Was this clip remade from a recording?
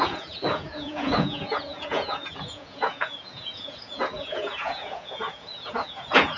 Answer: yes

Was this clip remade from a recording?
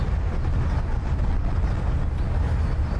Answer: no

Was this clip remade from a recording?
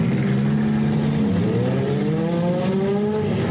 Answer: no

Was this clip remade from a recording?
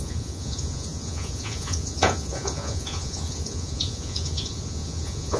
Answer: yes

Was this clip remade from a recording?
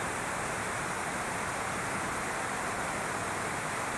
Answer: no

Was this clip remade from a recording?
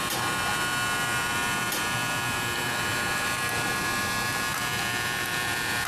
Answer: yes